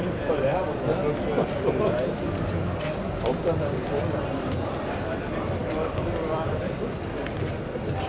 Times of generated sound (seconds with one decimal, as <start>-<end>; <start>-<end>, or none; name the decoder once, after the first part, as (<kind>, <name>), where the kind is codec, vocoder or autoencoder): 5.6-7.2 (vocoder, BigVGAN v2)